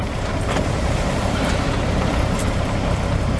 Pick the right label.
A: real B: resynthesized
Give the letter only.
B